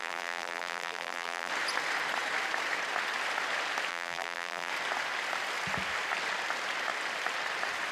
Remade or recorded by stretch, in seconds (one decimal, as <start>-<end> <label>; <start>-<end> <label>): 0.0-1.5 remade; 1.5-3.9 recorded; 3.9-4.7 remade; 4.7-7.9 recorded